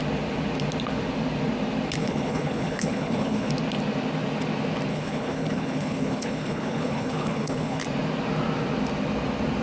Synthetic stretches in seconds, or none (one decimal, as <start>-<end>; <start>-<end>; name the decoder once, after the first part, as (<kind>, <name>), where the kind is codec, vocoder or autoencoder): 2.0-3.5 (codec, HILCodec); 4.9-7.8